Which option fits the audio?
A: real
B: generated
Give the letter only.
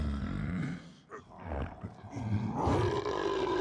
A